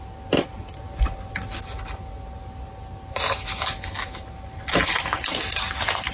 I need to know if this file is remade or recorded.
recorded